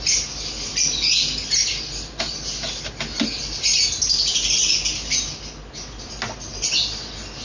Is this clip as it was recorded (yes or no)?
yes